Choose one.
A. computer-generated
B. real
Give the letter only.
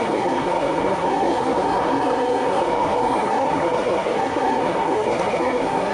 A